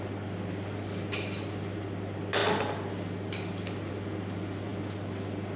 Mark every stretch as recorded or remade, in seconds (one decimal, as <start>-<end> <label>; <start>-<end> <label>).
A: 0.0-5.6 recorded